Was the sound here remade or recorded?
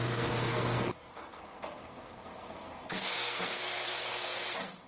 remade